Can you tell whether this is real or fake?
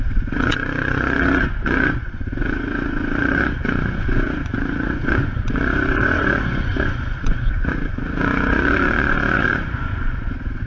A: fake